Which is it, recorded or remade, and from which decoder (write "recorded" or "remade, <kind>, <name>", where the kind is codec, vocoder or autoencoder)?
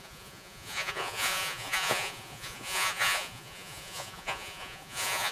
remade, vocoder, Vocos